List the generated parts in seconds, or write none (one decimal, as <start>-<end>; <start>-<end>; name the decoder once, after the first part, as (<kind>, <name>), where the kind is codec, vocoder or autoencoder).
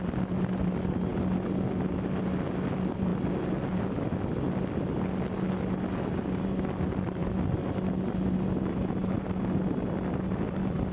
none